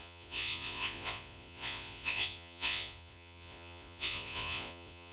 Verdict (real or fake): fake